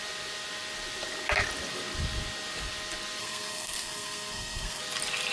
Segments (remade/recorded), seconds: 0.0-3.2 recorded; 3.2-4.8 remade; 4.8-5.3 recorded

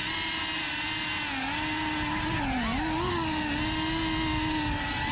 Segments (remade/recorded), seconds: 0.0-5.1 recorded

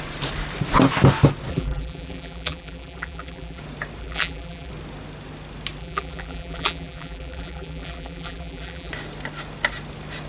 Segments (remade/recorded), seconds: 0.0-1.5 recorded; 1.5-3.6 remade; 3.6-4.0 recorded; 4.0-4.7 remade; 4.7-5.8 recorded; 5.8-8.9 remade; 8.9-10.3 recorded